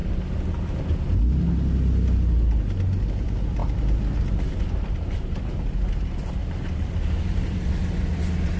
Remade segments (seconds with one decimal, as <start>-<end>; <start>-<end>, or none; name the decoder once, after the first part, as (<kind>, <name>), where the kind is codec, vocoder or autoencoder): 6.4-7.7 (vocoder, BigVGAN v2)